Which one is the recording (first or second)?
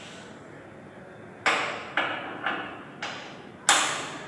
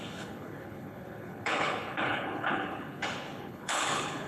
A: first